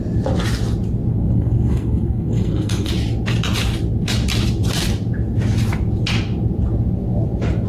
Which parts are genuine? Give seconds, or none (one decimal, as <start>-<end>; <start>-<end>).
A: 0.0-1.1; 2.9-7.7